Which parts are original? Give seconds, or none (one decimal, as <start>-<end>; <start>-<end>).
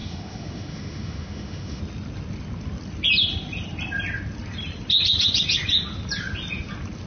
1.8-7.1